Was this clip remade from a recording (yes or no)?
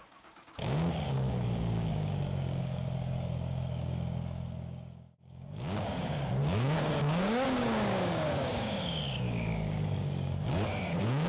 yes